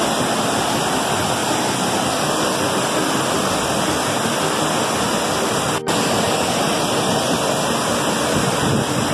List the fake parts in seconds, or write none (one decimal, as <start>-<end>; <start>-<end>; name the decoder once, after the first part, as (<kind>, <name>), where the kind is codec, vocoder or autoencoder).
1.4-4.9 (vocoder, BigVGAN v2)